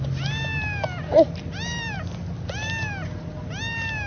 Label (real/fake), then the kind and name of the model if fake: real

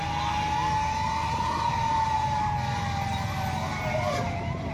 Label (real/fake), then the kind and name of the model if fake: real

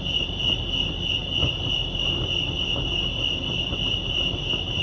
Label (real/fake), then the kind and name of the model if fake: real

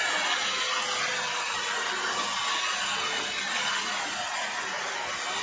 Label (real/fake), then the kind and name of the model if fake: real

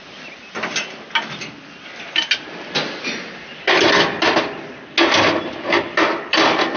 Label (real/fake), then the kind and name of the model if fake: real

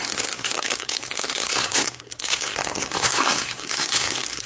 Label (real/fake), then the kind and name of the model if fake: fake, codec, SNAC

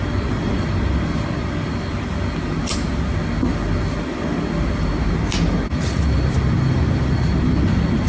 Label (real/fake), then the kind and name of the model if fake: real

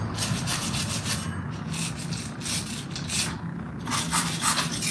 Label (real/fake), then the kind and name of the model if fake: real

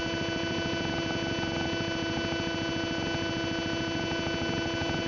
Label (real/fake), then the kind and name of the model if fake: real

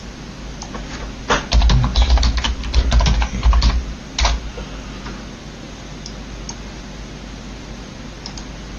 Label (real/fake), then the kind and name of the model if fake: real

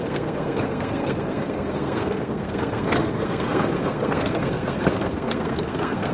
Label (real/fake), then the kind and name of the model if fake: fake, codec, SNAC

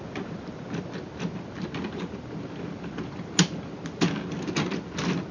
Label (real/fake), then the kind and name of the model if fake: real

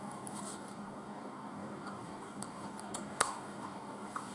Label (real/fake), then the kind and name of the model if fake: fake, codec, DAC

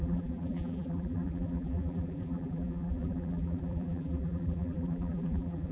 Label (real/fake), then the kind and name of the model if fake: fake, vocoder, BigVGAN v2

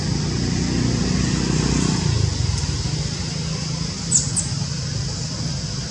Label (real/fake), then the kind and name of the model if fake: real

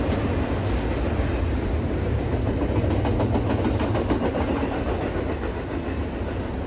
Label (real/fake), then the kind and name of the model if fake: real